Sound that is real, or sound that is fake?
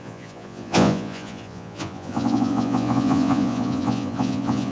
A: fake